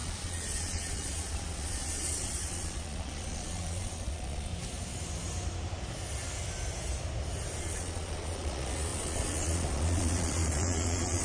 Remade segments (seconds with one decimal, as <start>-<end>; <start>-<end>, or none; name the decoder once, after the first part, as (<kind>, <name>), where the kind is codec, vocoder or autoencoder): 0.0-4.5 (vocoder, Vocos); 7.6-11.2